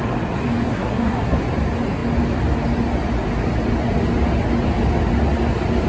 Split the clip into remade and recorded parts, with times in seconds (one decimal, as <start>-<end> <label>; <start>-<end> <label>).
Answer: 0.0-0.7 recorded; 0.7-1.4 remade; 1.4-5.9 recorded